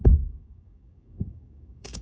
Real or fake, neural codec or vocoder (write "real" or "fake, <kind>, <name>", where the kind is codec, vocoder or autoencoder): fake, codec, DAC